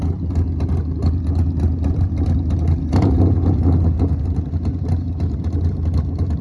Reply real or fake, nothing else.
real